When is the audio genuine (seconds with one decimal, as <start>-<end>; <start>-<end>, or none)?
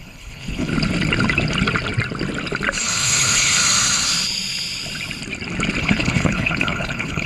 0.7-2.8; 3.6-5.8